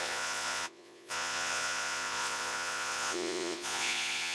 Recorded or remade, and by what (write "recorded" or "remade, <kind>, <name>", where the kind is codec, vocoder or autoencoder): remade, vocoder, Vocos